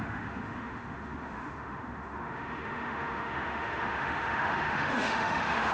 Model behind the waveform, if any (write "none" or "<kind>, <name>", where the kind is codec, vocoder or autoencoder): autoencoder, DAC-VAE